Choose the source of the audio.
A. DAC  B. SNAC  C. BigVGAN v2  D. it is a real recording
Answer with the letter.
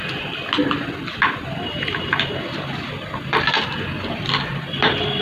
D